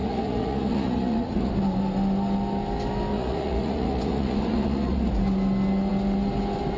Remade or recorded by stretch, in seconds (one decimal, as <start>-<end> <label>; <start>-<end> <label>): 0.0-1.5 remade; 1.5-3.1 recorded; 3.1-5.1 remade; 5.1-6.8 recorded